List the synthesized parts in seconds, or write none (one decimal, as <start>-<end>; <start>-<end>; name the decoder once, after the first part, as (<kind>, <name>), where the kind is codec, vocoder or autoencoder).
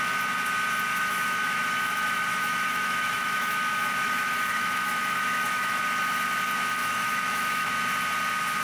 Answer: 0.9-5.8 (autoencoder, DAC-VAE); 6.8-7.7